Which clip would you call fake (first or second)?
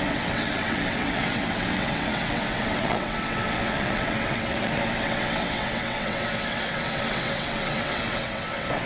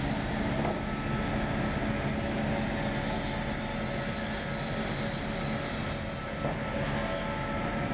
first